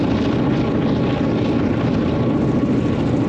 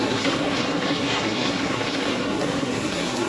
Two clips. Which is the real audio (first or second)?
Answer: first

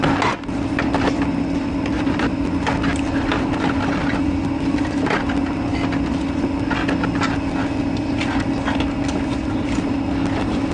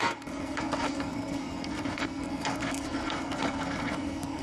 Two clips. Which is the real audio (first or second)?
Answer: first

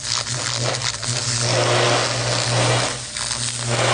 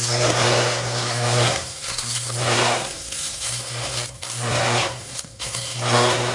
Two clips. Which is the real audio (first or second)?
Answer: first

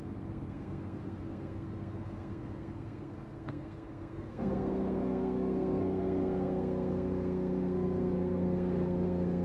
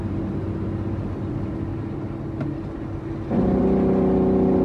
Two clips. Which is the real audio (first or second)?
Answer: second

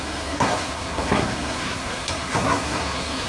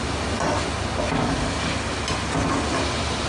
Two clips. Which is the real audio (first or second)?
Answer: second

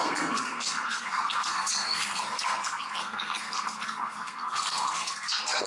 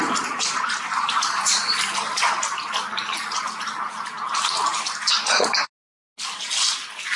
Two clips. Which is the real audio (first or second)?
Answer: second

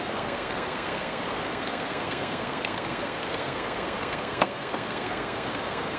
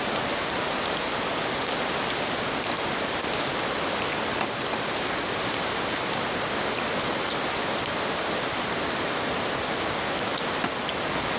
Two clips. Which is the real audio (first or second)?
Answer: second